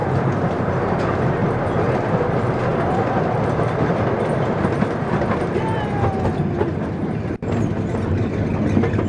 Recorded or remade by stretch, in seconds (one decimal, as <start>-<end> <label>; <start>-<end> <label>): 0.0-0.8 remade; 0.8-2.7 recorded; 2.7-6.4 remade; 6.4-9.1 recorded